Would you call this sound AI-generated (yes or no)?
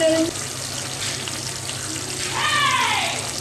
no